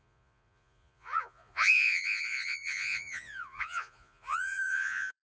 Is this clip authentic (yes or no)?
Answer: no